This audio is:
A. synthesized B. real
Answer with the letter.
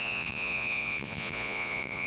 A